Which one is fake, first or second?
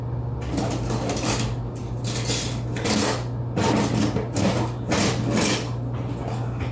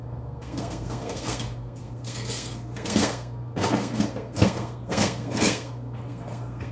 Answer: second